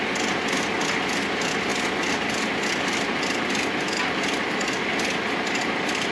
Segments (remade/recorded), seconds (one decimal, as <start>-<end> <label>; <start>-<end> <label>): 0.0-6.1 recorded